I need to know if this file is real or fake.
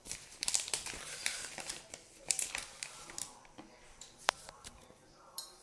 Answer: fake